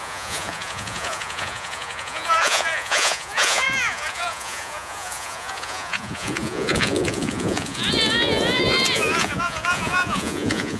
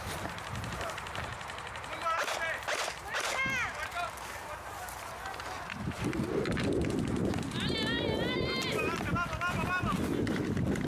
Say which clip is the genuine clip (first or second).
second